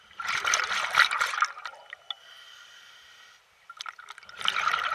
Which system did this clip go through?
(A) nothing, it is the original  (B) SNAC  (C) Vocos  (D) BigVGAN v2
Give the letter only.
A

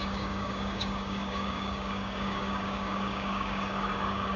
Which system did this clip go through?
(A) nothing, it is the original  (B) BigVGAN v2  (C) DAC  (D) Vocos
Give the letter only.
C